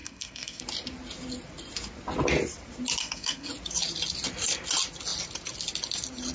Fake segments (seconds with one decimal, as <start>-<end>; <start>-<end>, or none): 0.0-0.6; 3.0-3.5